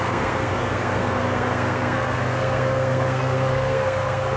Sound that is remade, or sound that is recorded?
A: remade